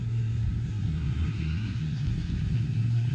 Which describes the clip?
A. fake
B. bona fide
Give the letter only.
A